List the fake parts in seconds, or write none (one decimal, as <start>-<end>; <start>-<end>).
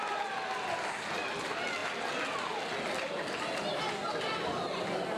none